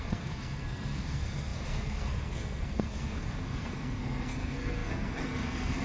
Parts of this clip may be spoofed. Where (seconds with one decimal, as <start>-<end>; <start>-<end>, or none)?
0.0-5.8